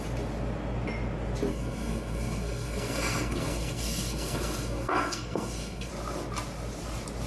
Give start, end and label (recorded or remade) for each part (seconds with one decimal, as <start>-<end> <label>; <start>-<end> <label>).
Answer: 0.0-1.5 recorded; 1.5-5.9 remade; 5.9-7.3 recorded